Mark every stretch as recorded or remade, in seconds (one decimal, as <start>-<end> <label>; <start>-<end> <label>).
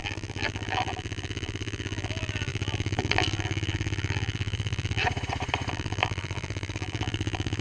0.0-5.0 remade; 5.0-5.7 recorded; 5.7-7.6 remade